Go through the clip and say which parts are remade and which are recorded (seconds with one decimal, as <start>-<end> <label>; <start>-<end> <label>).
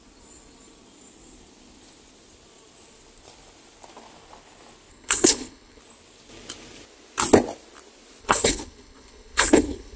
0.0-4.9 recorded; 4.9-5.8 remade; 5.8-8.2 recorded; 8.2-10.0 remade